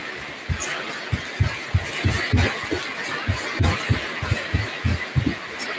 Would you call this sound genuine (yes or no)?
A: yes